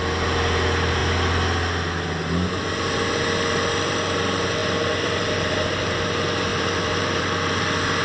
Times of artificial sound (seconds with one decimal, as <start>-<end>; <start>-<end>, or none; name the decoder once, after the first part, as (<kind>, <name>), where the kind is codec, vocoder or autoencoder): 4.6-5.5 (vocoder, BigVGAN v2); 6.5-7.2